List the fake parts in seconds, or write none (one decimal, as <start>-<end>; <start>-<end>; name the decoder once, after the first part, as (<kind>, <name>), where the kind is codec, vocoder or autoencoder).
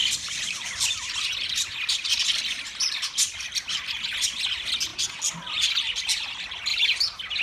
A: 0.0-4.4 (vocoder, BigVGAN v2)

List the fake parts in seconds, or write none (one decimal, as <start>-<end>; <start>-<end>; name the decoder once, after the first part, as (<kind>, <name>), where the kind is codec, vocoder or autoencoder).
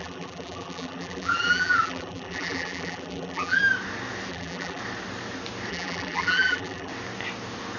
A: 0.0-3.6 (vocoder, BigVGAN v2); 4.3-4.8; 5.7-6.9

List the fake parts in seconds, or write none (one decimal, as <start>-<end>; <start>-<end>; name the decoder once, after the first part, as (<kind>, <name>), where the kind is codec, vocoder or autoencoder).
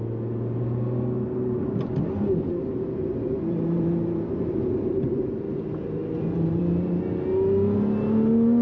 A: 3.1-6.6 (vocoder, BigVGAN v2)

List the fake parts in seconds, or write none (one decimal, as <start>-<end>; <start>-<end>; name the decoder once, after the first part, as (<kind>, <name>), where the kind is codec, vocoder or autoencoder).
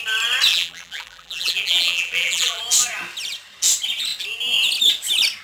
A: 0.5-2.6 (vocoder, BigVGAN v2)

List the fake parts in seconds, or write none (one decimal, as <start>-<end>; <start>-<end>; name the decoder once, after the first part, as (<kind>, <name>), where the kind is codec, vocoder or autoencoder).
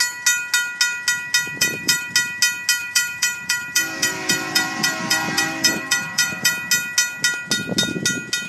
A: 1.6-2.1 (vocoder, BigVGAN v2); 2.8-6.5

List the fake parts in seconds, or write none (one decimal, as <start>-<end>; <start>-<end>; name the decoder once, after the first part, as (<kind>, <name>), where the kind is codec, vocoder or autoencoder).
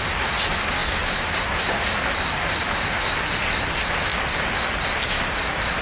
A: 0.8-1.7 (vocoder, BigVGAN v2)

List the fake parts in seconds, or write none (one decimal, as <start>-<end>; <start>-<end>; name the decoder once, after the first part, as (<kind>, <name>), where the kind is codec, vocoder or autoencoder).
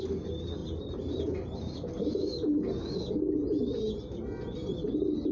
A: 0.6-1.3 (vocoder, BigVGAN v2)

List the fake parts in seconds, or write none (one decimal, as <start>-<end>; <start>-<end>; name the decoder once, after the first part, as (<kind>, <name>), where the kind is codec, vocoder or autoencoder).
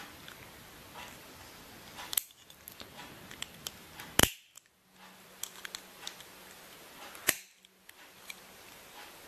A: none